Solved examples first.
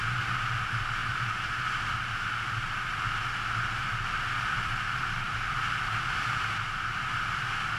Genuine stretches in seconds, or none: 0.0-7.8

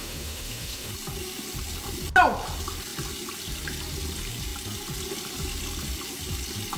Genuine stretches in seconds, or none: 0.9-6.8